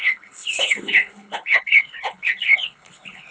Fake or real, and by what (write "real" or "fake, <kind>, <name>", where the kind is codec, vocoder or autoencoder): fake, codec, HILCodec